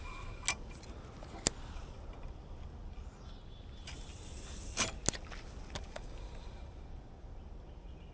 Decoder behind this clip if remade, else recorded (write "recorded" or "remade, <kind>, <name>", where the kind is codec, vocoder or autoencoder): recorded